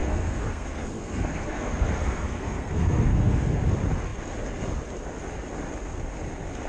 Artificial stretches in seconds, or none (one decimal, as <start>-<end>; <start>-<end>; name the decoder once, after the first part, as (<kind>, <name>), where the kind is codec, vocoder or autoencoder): 0.0-3.6 (codec, SNAC)